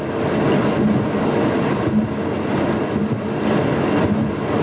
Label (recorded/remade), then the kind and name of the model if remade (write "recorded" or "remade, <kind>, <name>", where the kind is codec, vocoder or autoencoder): recorded